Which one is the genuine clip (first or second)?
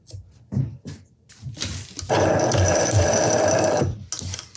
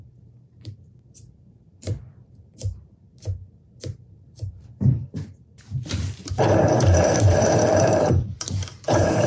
first